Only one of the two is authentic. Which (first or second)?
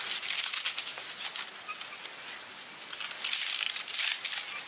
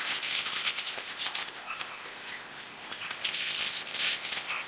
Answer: first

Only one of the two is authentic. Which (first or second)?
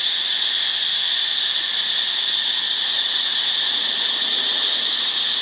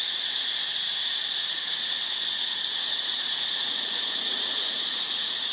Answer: first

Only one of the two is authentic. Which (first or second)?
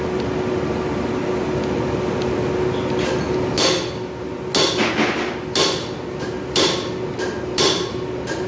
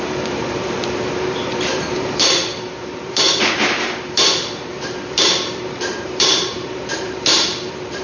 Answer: first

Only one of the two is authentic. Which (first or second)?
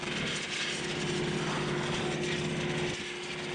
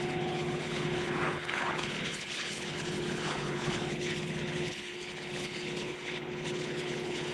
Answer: first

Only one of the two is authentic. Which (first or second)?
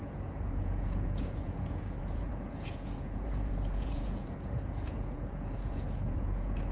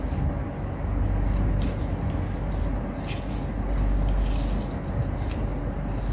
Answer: second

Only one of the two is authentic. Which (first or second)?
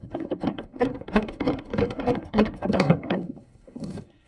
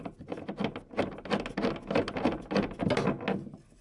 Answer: second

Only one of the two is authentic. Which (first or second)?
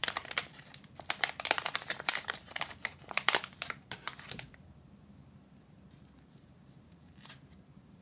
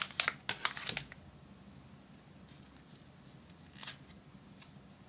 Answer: second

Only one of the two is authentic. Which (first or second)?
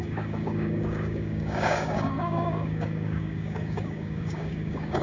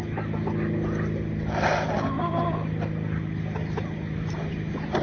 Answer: second